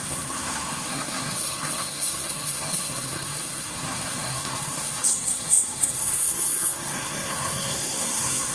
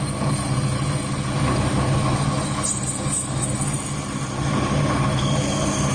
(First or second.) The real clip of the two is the second